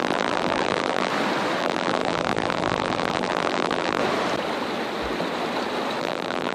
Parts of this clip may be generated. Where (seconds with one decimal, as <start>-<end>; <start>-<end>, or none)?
0.0-1.1; 1.6-4.0; 6.0-6.5